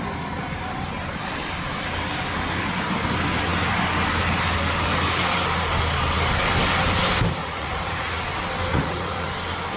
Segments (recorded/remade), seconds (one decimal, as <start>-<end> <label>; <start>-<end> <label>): 0.0-7.4 recorded; 7.4-8.2 remade; 8.2-8.7 recorded; 8.7-9.3 remade; 9.3-9.8 recorded